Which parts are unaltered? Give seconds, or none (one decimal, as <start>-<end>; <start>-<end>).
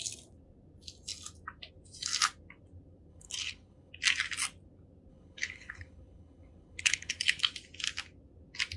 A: 0.0-3.1; 3.9-5.1; 7.4-8.8